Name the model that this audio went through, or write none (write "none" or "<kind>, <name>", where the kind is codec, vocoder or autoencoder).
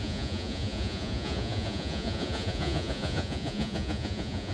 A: vocoder, Vocos